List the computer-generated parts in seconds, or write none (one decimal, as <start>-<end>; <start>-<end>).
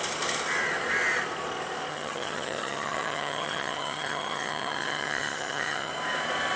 1.9-5.9